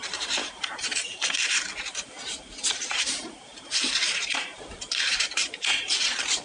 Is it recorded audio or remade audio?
remade